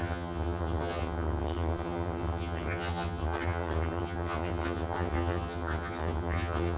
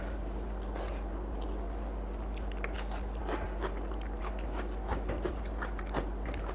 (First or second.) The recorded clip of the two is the second